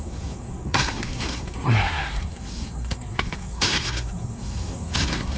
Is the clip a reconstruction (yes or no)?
yes